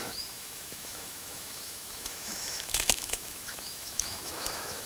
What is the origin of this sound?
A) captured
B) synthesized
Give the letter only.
B